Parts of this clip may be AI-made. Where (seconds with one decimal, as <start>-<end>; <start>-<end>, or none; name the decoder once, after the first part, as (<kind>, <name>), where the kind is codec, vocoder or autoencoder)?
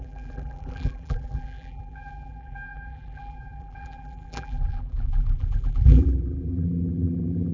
0.0-7.5 (vocoder, BigVGAN v2)